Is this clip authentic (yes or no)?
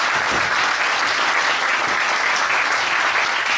yes